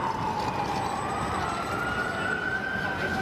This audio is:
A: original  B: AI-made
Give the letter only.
A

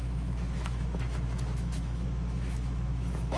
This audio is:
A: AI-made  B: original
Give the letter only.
A